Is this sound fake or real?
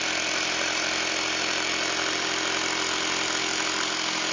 real